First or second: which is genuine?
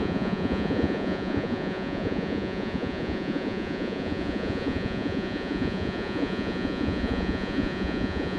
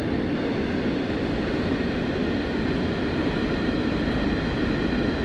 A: second